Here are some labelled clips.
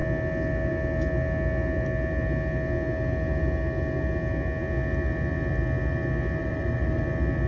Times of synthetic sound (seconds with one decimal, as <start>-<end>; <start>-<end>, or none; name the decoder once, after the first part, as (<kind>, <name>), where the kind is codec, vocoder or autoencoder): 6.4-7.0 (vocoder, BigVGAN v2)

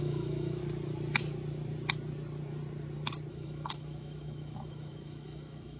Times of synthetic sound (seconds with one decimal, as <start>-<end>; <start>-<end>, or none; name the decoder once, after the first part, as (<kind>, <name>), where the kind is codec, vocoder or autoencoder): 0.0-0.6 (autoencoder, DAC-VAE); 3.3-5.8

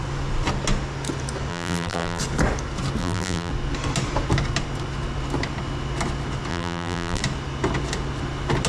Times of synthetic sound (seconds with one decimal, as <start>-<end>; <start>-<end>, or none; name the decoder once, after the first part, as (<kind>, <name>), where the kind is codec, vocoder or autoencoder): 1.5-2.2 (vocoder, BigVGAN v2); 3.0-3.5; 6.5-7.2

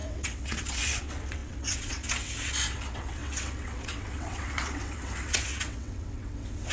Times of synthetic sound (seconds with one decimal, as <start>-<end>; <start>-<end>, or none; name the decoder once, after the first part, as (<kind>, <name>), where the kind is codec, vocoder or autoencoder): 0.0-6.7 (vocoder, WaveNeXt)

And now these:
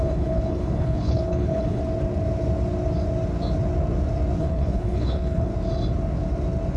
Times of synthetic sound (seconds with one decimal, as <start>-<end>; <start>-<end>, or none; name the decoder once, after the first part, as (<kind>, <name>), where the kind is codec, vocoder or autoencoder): 0.0-1.8 (codec, HILCodec); 4.4-5.5